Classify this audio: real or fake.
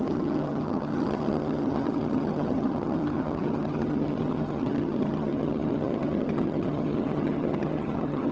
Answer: fake